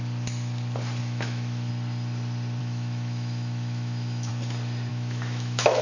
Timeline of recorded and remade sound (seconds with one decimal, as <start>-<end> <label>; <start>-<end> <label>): 0.0-1.0 recorded; 1.0-1.7 remade; 1.7-2.6 recorded; 2.6-4.3 remade; 4.3-4.9 recorded; 4.9-5.8 remade